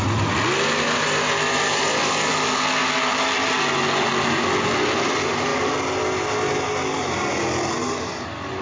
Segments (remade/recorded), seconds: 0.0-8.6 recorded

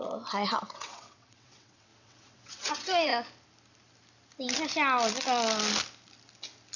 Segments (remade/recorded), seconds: 0.0-3.1 remade; 3.1-6.8 recorded

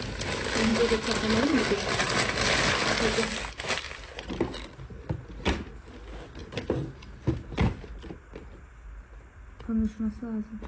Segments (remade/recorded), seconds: 0.0-10.7 recorded

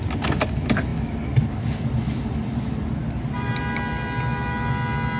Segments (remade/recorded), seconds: 0.0-5.2 recorded

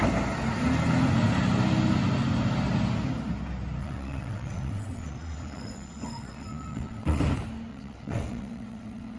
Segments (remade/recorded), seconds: 0.0-3.8 recorded; 3.8-7.2 remade; 7.2-7.7 recorded; 7.7-9.2 remade

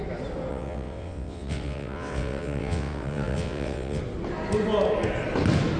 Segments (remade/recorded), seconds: 0.0-0.5 recorded; 0.5-4.0 remade; 4.0-5.8 recorded

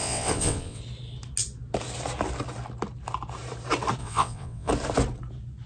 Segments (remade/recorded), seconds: 0.0-0.8 remade; 0.8-4.0 recorded; 4.0-4.7 remade; 4.7-5.7 recorded

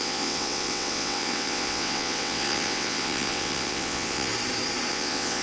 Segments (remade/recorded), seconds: 0.0-4.3 remade; 4.3-4.9 recorded; 4.9-5.4 remade